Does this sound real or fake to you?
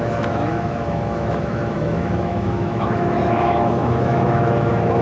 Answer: fake